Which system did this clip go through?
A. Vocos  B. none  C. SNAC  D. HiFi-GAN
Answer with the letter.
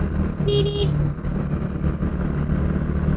B